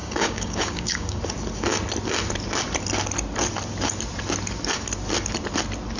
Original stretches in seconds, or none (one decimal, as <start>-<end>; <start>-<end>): 1.2-6.0